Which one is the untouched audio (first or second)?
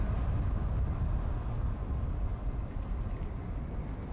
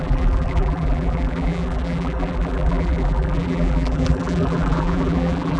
first